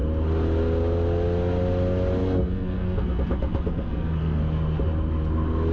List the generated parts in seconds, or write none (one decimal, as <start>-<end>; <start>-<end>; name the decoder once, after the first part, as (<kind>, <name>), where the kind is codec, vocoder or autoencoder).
2.2-4.4 (codec, SNAC)